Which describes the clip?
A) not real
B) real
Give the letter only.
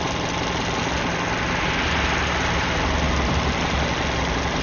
B